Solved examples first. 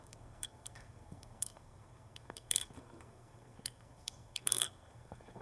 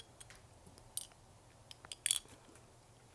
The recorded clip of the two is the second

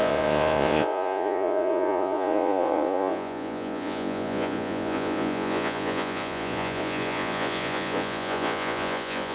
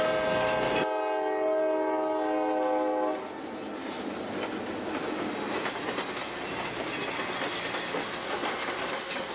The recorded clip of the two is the second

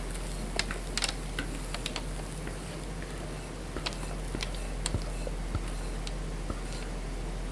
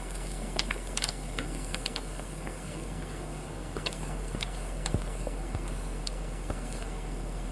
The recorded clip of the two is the first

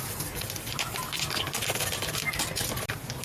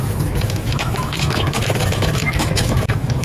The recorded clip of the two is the first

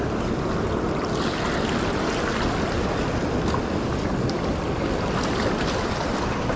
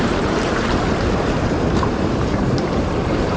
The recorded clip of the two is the first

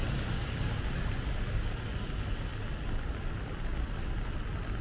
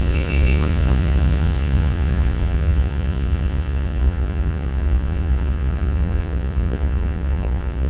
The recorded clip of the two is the first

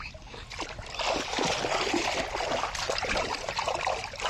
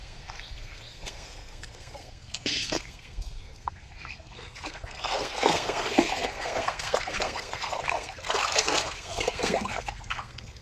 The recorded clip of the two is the first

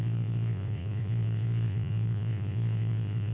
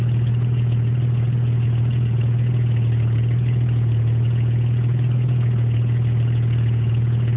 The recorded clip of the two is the second